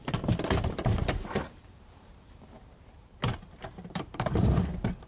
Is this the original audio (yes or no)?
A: no